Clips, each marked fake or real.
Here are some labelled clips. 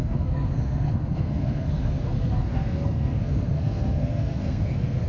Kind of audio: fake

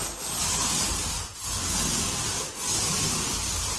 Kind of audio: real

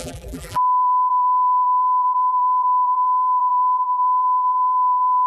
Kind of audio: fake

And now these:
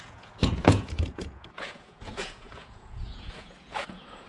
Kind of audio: fake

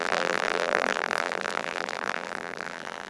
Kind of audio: fake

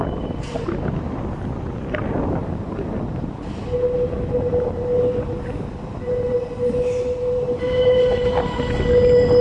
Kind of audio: real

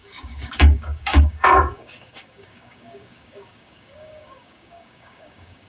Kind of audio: fake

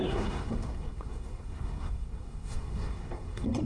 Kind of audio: fake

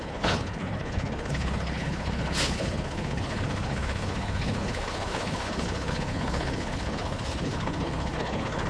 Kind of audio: fake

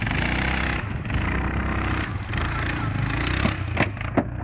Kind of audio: real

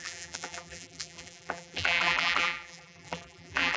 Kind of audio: fake